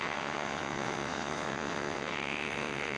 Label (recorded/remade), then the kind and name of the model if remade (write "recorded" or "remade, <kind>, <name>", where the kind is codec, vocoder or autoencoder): remade, vocoder, WaveNeXt